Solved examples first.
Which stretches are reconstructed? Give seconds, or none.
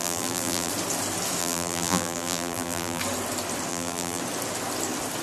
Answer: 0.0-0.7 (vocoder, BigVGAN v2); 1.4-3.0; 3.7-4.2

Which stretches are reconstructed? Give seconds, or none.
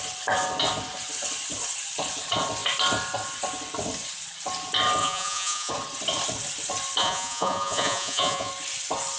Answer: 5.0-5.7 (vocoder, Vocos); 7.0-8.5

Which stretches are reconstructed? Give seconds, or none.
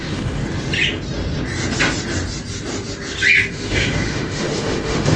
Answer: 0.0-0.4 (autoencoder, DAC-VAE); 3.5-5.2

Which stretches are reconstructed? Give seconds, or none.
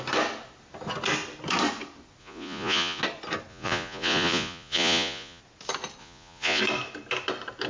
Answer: 2.2-3.0 (vocoder, Vocos); 3.5-5.4; 6.0-6.6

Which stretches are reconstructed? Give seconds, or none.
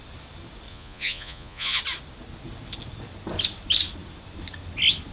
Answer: 0.7-1.8 (vocoder, Vocos)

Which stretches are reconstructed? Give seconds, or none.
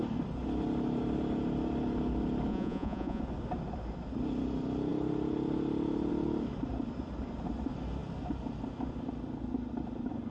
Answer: 2.5-3.2 (vocoder, Vocos)